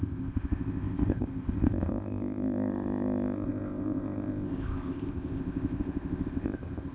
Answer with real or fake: fake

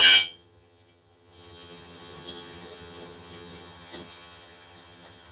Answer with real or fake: fake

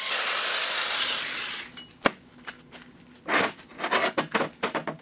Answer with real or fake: real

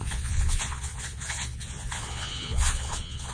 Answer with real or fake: fake